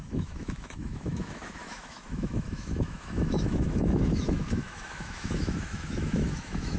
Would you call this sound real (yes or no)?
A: no